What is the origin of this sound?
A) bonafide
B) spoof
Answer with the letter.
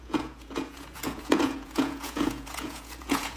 B